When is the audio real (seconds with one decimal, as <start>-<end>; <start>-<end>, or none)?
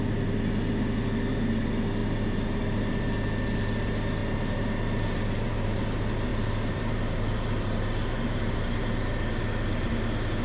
0.0-2.0; 2.9-4.2; 5.8-6.3; 9.9-10.4